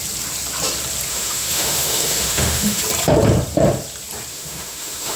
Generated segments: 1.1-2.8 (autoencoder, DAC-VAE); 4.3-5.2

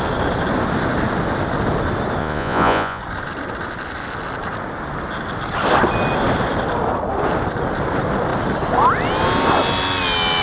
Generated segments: 2.2-3.0 (vocoder, Vocos)

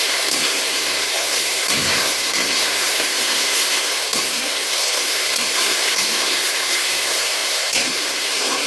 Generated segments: 0.0-8.7 (codec, SNAC)

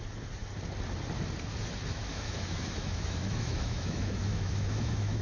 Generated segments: 1.9-5.2 (autoencoder, DAC-VAE)